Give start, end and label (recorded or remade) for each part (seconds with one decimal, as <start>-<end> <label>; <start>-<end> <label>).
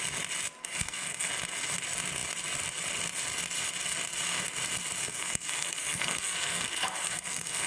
0.0-0.6 recorded; 0.6-1.3 remade; 1.3-5.0 recorded; 5.0-7.7 remade